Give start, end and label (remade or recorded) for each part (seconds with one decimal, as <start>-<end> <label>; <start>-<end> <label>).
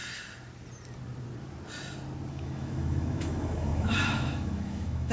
0.0-2.3 recorded; 2.3-5.1 remade